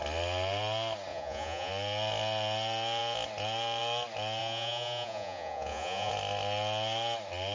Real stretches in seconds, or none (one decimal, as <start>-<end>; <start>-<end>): 0.0-1.1; 1.7-4.4; 6.1-7.5